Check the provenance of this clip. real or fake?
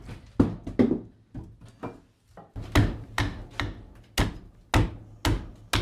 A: real